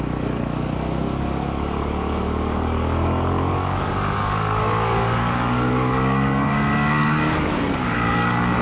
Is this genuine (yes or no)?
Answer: no